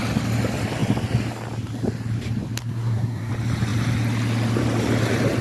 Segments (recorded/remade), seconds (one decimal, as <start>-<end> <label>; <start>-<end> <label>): 0.0-2.6 recorded; 2.6-3.3 remade; 3.3-5.4 recorded